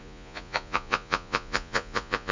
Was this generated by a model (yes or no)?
yes